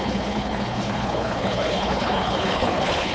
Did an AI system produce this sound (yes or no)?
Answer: yes